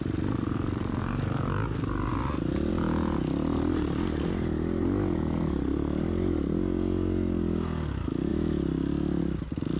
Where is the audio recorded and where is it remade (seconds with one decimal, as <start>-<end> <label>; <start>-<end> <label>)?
0.0-9.8 recorded